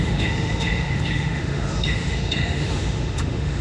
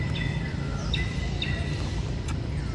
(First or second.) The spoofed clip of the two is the first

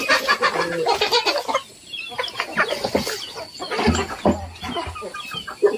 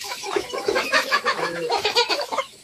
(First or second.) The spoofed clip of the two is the second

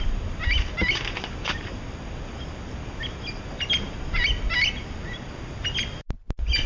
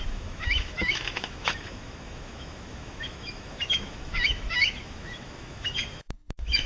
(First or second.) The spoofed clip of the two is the second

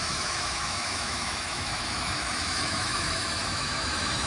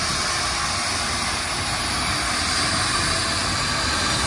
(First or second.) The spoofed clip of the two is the first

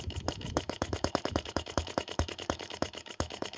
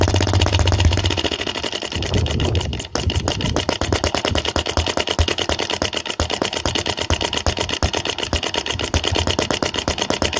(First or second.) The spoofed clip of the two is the first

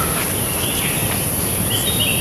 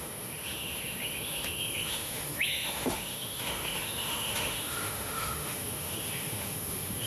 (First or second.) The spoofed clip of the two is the second